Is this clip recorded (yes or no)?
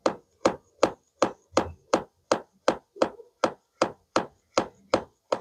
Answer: yes